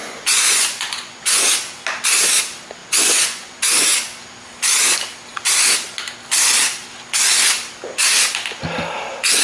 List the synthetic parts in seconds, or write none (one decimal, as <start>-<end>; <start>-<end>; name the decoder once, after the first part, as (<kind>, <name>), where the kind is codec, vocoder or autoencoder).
0.0-1.4 (vocoder, Vocos); 2.8-3.6